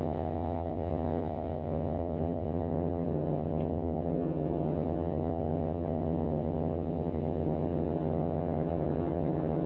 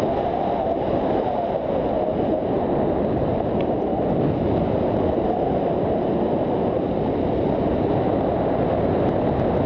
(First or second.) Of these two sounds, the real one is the second